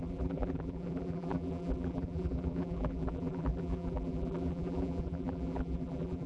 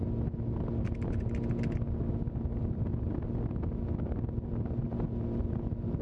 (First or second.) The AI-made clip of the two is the first